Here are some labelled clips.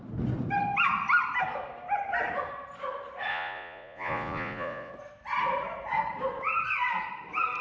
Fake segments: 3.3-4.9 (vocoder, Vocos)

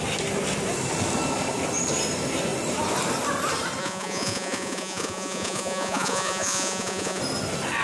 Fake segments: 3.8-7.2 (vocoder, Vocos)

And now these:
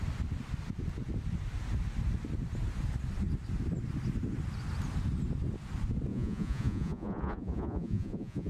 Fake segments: 6.1-8.5 (vocoder, Vocos)